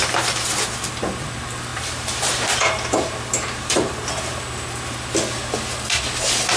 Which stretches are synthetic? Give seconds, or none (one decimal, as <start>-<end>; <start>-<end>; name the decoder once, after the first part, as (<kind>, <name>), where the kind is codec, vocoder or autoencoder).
0.0-0.8 (vocoder, BigVGAN v2); 1.7-4.4